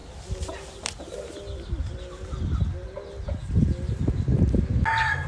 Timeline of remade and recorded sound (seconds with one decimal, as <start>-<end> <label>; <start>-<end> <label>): 0.0-5.3 recorded